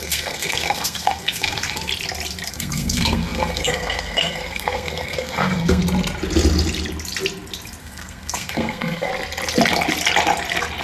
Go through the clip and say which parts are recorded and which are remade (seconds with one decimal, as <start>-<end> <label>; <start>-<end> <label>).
0.0-1.9 remade; 1.9-2.5 recorded; 2.5-5.8 remade; 5.8-7.8 recorded; 7.8-9.1 remade; 9.1-10.8 recorded